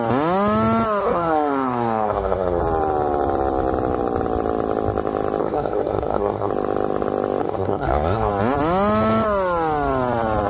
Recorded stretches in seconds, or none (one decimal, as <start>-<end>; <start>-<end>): 0.0-1.0; 2.6-5.4; 6.5-7.4; 8.3-10.5